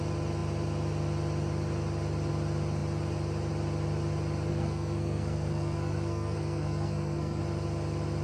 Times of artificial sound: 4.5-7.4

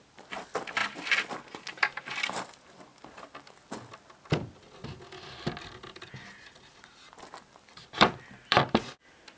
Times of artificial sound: 0.0-0.8; 2.0-2.9; 7.5-9.4

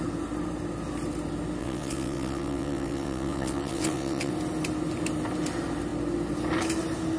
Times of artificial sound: 1.6-4.3

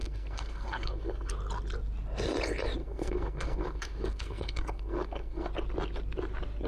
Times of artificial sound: 0.0-1.3; 2.8-5.5